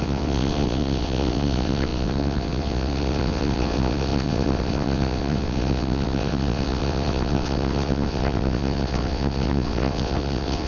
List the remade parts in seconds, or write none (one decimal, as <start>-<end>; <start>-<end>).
0.0-10.7